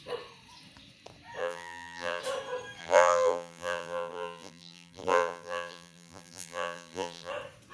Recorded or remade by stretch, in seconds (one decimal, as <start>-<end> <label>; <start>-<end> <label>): 0.0-1.4 recorded; 1.4-2.2 remade; 2.2-2.8 recorded; 2.8-7.3 remade; 7.3-7.7 recorded